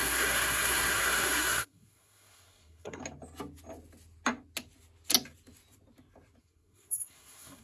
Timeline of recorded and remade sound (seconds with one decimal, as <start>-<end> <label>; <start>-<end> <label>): 0.0-3.0 remade; 3.0-6.4 recorded; 6.4-7.6 remade